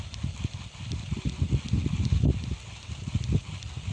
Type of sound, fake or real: real